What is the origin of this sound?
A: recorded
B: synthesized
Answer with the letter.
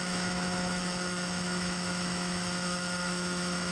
B